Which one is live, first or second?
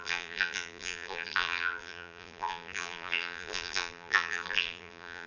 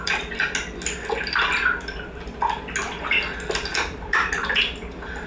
second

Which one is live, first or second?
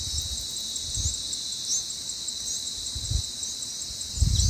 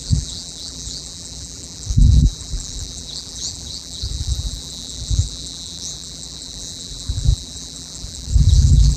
first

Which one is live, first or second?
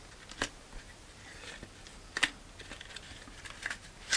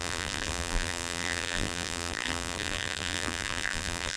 first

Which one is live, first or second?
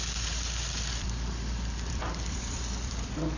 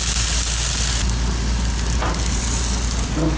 second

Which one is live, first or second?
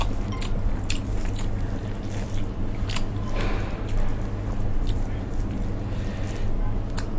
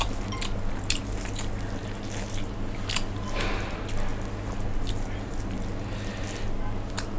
second